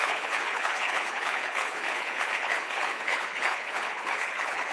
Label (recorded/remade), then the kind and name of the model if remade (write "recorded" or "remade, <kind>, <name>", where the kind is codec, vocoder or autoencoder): remade, codec, HILCodec